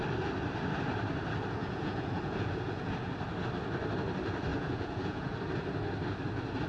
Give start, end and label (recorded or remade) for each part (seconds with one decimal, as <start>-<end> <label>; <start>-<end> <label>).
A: 0.0-1.6 recorded; 1.6-3.1 remade; 3.1-4.5 recorded; 4.5-5.4 remade; 5.4-6.7 recorded